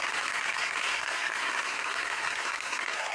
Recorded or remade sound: remade